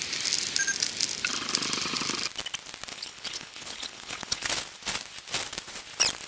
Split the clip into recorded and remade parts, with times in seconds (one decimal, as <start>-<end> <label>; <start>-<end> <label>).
0.0-2.9 recorded; 2.9-4.5 remade; 4.5-6.3 recorded